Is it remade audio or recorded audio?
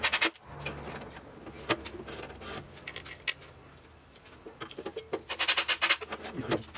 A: recorded